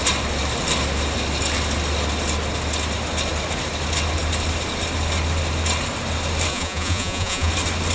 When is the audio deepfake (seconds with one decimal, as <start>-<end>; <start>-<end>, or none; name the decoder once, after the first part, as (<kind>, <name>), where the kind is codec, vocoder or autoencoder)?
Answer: 6.5-7.5 (vocoder, Vocos)